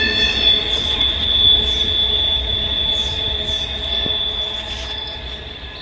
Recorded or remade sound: recorded